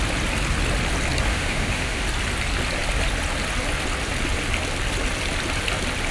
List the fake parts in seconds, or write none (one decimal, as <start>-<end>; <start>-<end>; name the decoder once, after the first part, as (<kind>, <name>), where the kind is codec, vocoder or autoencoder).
1.3-2.0 (autoencoder, DAC-VAE)